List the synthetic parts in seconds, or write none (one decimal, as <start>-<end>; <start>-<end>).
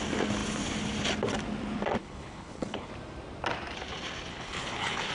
2.0-2.9; 4.3-5.1